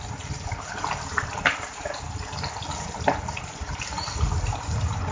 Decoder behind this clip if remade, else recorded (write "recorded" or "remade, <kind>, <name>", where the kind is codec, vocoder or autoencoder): recorded